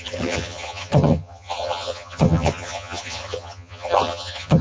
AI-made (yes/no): yes